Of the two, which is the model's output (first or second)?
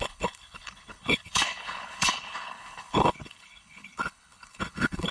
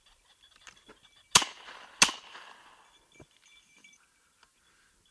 first